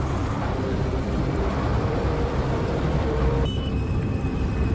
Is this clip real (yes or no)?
no